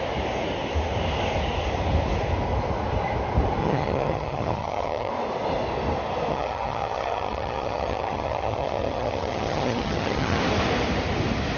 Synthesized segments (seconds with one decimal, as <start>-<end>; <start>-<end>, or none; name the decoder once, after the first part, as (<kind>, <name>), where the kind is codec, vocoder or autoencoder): 3.6-5.1 (vocoder, HiFi-GAN); 6.3-10.4